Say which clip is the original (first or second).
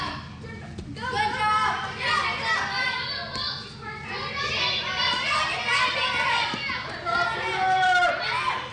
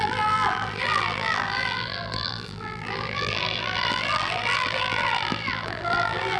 first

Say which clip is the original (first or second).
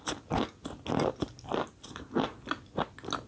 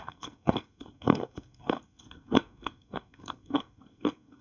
first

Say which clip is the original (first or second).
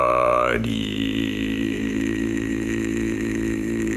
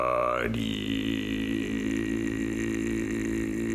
second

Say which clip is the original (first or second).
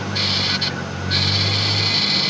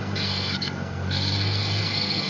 first